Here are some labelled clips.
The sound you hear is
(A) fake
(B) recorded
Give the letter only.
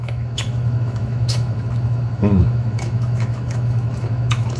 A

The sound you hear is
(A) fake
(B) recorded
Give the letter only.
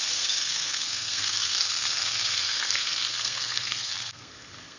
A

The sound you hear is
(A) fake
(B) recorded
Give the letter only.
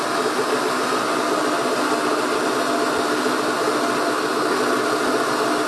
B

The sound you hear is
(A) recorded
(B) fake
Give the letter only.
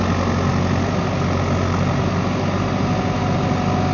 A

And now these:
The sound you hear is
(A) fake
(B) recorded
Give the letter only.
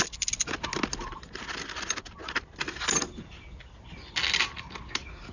B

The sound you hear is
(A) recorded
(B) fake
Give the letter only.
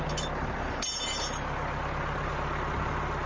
A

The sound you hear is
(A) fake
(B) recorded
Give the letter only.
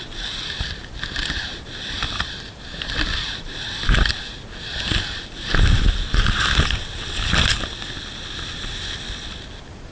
B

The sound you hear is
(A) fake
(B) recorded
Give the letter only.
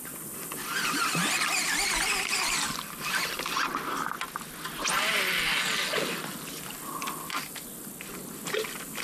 B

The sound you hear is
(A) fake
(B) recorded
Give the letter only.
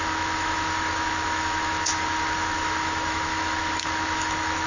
A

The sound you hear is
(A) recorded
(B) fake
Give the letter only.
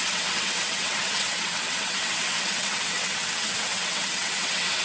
B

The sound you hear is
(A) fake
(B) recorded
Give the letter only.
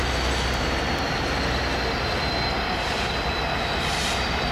B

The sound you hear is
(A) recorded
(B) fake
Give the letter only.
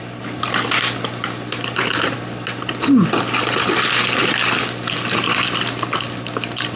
A